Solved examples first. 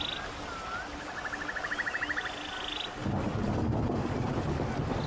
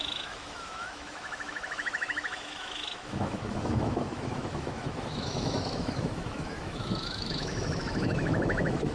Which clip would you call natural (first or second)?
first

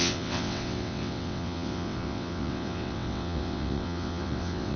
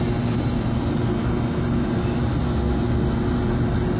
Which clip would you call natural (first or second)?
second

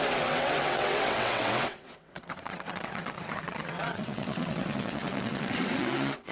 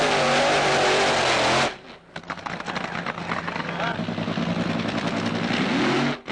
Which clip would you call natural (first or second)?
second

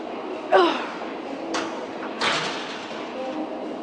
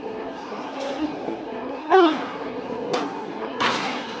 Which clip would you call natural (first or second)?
first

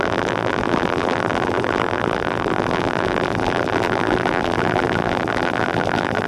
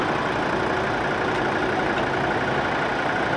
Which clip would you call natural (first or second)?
second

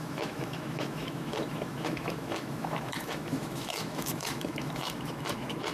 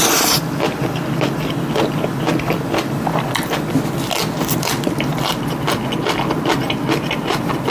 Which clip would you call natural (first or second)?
second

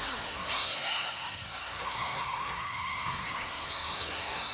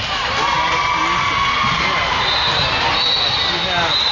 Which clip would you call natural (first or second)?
second